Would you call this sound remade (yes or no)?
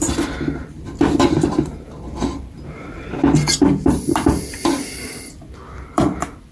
yes